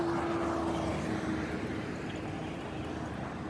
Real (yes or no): yes